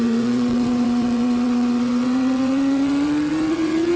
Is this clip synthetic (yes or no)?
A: yes